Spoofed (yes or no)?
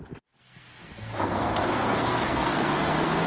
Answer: yes